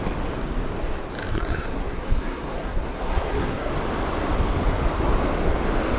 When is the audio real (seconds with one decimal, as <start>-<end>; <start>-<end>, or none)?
0.0-1.3; 3.7-6.0